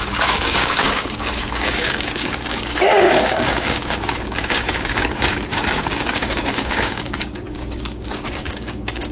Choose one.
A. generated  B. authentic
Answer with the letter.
A